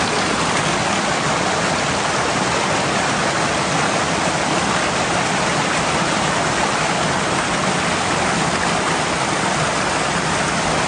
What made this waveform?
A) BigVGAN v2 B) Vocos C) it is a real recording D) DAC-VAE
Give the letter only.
A